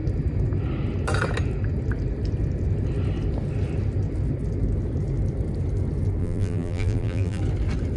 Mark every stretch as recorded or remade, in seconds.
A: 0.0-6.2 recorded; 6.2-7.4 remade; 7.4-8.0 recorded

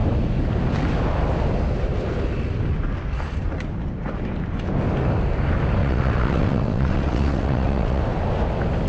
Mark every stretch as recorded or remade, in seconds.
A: 0.0-5.8 recorded; 5.8-8.0 remade; 8.0-8.9 recorded

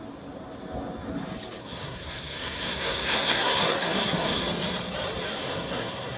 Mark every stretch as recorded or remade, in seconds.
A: 0.0-1.6 recorded; 1.6-4.4 remade; 4.4-5.3 recorded; 5.3-6.2 remade